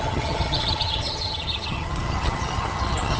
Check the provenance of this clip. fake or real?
fake